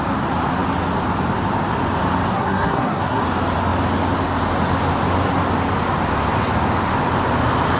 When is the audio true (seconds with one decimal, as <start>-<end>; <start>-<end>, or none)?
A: 0.0-2.3; 3.2-7.8